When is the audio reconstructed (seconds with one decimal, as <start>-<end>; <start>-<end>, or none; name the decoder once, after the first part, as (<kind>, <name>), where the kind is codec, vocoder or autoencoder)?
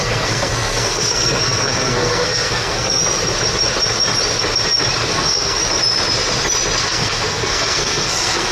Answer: 0.0-3.0 (codec, SNAC); 5.1-5.6; 6.8-8.5